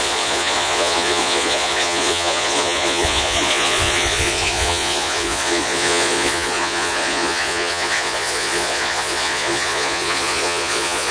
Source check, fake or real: fake